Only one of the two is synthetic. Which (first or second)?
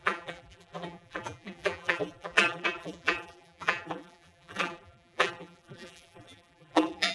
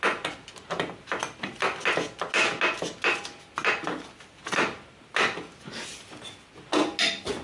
first